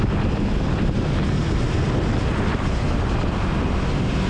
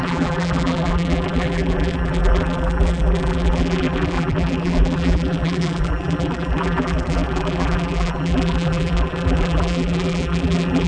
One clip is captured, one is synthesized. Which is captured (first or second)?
first